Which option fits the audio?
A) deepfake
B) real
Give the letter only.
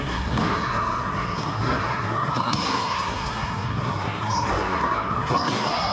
A